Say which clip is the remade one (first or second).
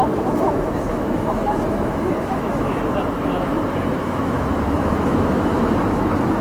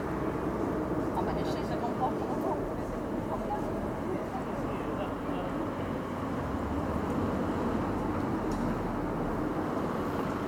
first